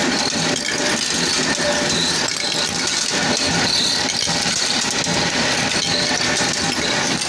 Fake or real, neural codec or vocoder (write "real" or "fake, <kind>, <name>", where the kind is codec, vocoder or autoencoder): real